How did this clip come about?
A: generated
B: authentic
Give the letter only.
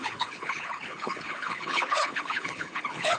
A